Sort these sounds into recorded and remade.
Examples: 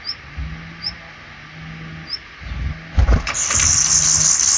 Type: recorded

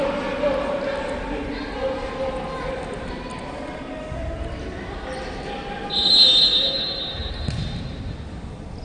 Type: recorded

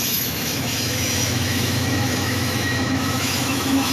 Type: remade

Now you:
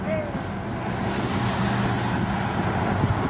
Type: recorded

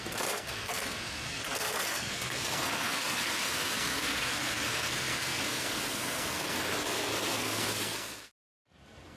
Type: remade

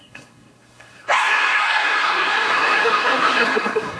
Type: remade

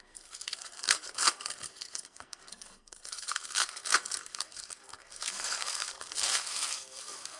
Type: remade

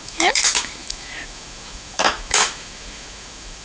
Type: remade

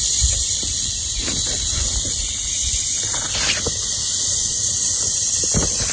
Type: recorded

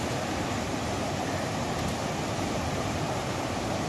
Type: remade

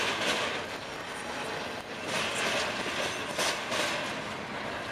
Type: recorded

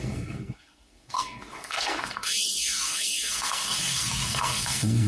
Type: remade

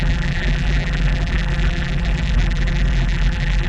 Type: remade